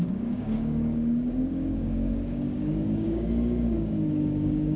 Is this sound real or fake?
fake